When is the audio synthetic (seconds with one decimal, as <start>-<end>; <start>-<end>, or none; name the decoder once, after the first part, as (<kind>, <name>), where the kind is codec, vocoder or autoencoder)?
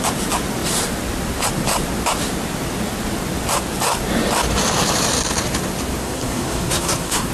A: 6.0-7.3 (codec, SNAC)